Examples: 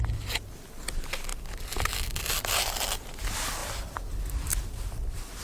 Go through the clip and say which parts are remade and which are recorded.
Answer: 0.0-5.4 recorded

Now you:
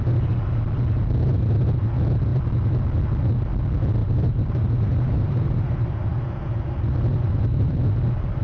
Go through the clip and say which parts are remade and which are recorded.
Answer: 0.0-4.0 recorded; 4.0-5.6 remade; 5.6-7.1 recorded; 7.1-7.8 remade; 7.8-8.4 recorded

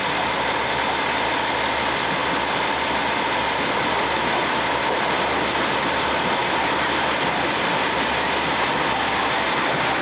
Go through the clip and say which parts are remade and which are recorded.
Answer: 0.0-1.5 remade; 1.5-6.4 recorded; 6.4-8.3 remade; 8.3-10.0 recorded

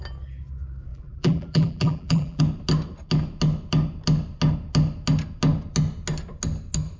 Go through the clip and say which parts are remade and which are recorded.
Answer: 0.0-0.9 recorded; 0.9-2.4 remade; 2.4-7.0 recorded

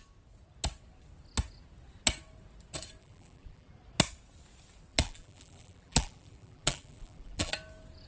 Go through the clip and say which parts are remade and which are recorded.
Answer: 0.0-3.0 recorded; 3.0-3.7 remade; 3.7-4.9 recorded; 4.9-7.5 remade; 7.5-8.1 recorded

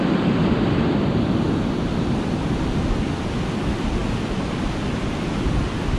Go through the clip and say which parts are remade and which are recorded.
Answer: 0.0-6.0 recorded